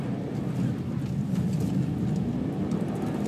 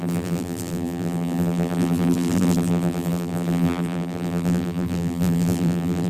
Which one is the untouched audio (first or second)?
first